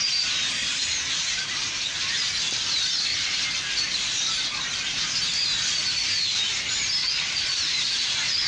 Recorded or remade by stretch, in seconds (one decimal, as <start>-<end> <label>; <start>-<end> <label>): 0.0-0.6 recorded; 0.6-1.3 remade; 1.3-7.0 recorded; 7.0-8.5 remade